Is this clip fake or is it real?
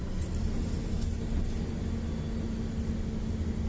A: real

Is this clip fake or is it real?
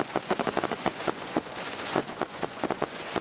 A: fake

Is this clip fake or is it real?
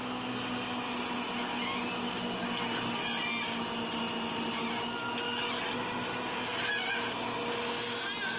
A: real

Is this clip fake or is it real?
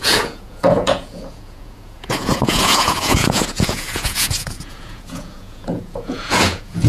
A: fake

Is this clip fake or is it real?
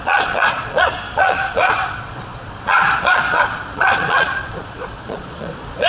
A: fake